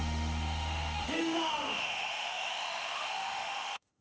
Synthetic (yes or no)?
yes